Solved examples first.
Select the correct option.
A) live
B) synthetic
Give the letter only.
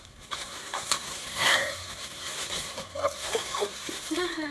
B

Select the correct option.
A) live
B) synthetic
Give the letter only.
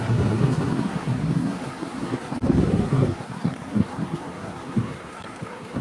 B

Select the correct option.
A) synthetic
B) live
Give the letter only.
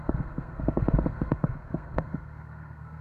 A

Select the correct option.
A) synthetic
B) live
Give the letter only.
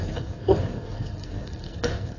A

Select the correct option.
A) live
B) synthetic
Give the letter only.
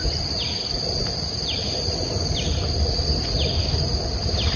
A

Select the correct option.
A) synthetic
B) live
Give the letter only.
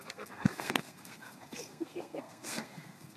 A